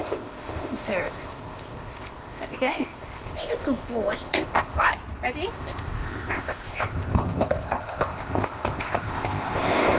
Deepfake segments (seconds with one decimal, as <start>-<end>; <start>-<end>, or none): 0.0-4.9; 5.5-10.0

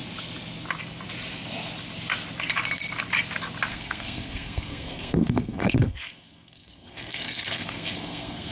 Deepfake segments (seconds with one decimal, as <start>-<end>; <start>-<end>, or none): 3.7-8.5

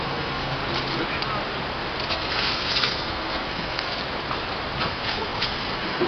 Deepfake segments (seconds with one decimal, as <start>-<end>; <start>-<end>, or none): 0.0-0.6; 2.1-4.0; 4.8-6.1

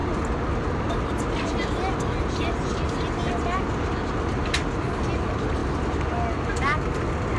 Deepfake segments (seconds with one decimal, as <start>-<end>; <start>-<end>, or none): none

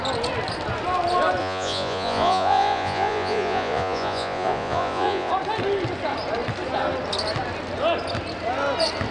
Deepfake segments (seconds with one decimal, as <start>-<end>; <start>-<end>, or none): 1.4-5.3

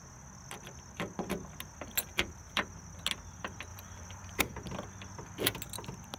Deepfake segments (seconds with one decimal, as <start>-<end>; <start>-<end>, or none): 2.1-2.7; 3.7-4.4